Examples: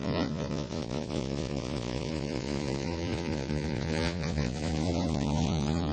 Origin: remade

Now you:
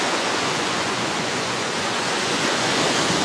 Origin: remade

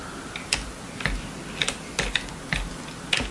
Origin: recorded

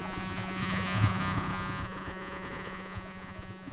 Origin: remade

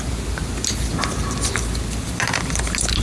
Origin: recorded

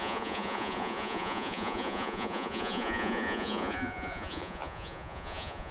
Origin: remade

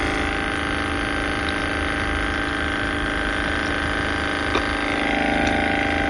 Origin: recorded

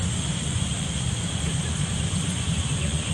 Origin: remade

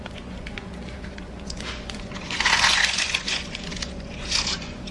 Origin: remade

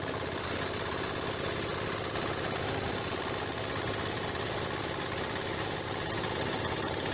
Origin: recorded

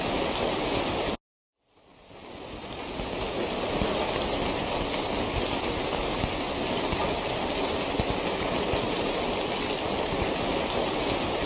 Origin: recorded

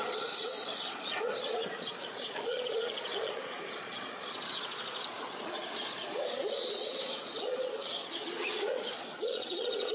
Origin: remade